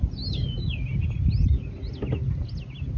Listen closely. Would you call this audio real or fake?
real